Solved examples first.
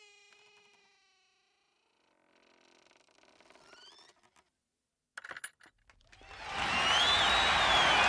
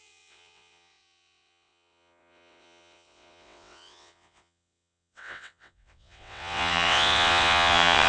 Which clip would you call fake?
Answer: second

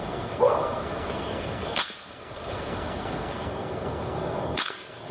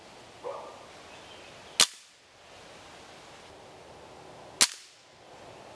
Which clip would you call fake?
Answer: first